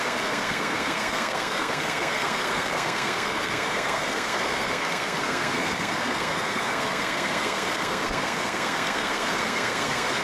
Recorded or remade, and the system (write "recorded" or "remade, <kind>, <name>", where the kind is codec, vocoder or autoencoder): remade, codec, SNAC